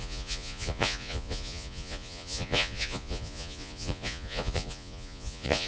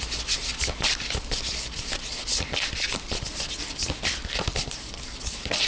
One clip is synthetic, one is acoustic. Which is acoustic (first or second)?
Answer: second